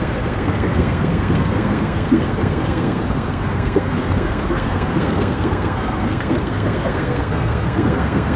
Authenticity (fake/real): fake